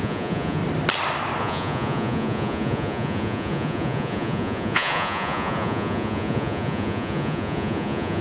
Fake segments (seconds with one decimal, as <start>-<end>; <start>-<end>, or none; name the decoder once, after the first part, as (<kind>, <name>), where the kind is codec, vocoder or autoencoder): 0.0-0.6 (vocoder, Vocos); 1.4-8.2

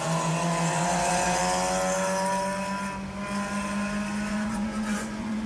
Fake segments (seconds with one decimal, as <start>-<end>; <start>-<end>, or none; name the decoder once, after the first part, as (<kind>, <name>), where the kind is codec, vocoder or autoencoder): 0.0-1.4 (vocoder, Vocos); 4.3-5.5

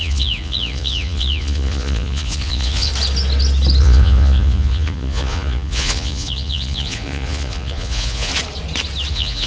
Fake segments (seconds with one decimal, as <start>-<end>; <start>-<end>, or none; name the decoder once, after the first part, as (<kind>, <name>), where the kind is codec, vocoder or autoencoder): 0.0-2.9 (vocoder, Vocos); 3.8-8.3; 9.1-9.5